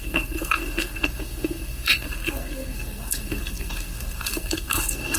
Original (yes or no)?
no